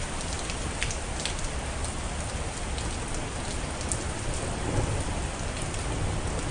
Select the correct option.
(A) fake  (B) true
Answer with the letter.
B